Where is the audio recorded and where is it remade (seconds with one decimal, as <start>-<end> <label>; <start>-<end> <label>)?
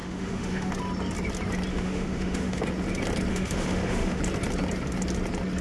0.0-0.7 remade; 0.7-1.7 recorded; 1.7-2.6 remade; 2.6-3.3 recorded; 3.3-4.2 remade; 4.2-5.6 recorded